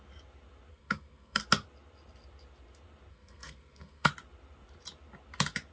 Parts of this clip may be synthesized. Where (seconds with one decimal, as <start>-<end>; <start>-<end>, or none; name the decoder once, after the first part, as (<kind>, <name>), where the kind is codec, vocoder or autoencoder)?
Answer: 0.7-1.4 (codec, SNAC); 3.1-4.1